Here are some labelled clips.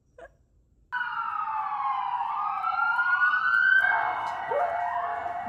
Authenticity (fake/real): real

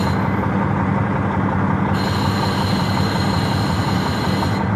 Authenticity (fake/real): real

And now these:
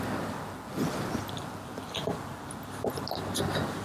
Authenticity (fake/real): real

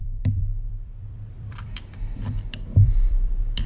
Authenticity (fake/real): fake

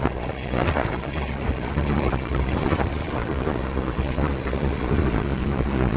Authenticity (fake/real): fake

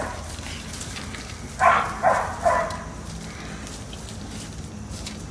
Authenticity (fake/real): real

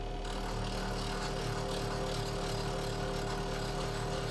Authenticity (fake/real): real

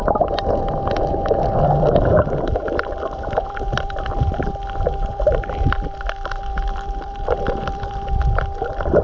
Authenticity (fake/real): fake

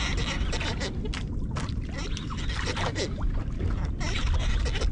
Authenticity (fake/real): real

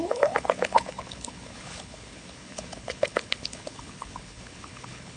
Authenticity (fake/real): fake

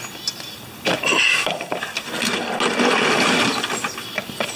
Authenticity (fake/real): real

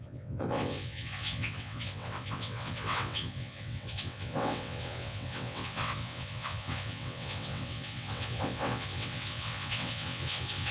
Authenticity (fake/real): fake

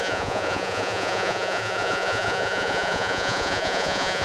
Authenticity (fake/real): fake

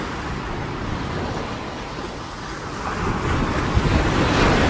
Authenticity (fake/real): real